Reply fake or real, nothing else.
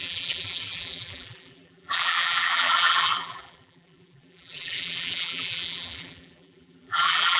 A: fake